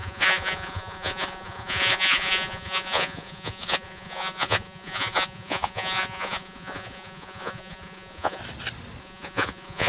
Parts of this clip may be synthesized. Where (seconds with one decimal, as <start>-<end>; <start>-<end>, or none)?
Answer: 0.0-8.4; 9.0-9.9